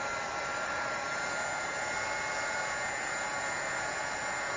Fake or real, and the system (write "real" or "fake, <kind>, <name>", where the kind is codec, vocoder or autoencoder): real